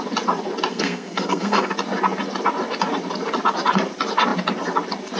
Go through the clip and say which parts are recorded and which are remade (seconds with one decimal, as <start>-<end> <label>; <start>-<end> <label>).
0.0-0.7 recorded; 0.7-1.7 remade; 1.7-5.2 recorded